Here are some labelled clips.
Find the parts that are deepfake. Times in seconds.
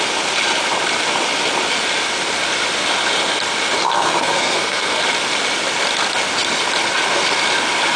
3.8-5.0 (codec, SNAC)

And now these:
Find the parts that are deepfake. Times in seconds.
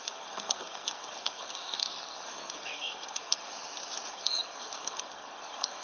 0.0-3.5 (codec, SNAC); 4.1-5.8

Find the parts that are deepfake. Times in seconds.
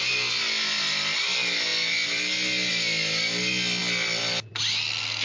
none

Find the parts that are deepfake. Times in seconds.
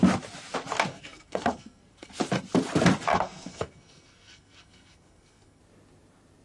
0.9-2.1 (codec, SNAC); 3.1-5.6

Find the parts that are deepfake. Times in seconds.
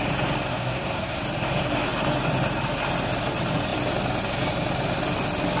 0.5-1.2 (codec, SNAC)